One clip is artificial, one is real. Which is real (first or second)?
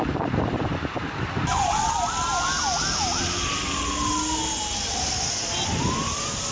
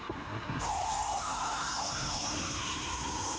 first